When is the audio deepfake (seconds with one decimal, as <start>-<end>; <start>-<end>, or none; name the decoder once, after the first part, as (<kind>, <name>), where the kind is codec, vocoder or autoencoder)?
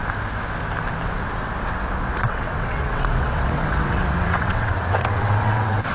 2.2-5.9 (vocoder, WaveNeXt)